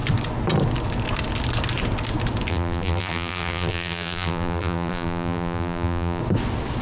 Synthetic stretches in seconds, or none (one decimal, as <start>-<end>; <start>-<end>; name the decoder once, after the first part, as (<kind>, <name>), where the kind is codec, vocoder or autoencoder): 2.5-6.2 (vocoder, BigVGAN v2)